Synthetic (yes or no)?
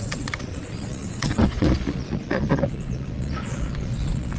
yes